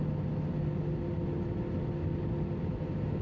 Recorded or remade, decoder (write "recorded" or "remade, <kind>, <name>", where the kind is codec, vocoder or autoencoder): recorded